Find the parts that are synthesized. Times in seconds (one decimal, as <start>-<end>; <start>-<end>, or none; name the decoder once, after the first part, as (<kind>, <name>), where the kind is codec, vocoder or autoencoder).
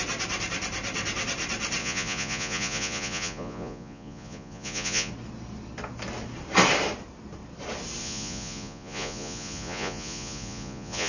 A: 1.8-5.1 (vocoder, Vocos); 8.0-11.1